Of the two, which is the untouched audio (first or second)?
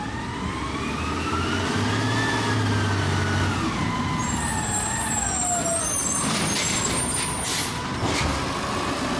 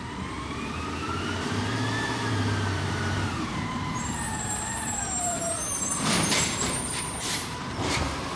first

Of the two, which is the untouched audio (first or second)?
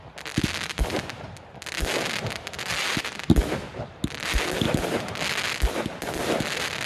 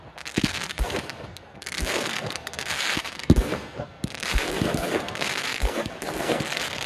first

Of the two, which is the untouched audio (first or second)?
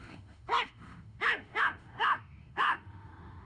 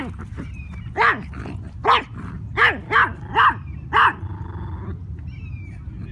second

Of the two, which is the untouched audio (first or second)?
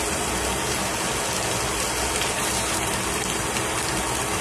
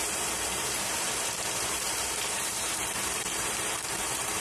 first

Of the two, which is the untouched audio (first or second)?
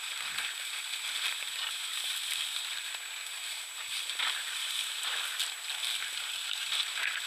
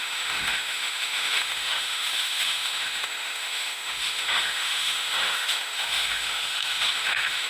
first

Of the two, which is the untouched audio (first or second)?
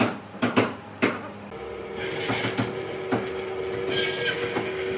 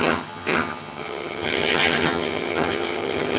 first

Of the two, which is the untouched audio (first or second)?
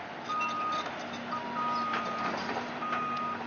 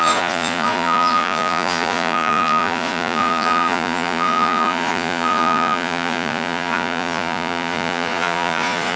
first